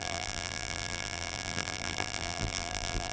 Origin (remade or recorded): remade